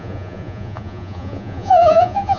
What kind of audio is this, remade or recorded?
remade